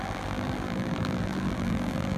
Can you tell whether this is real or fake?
fake